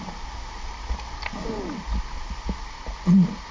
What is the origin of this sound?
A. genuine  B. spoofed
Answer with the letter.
A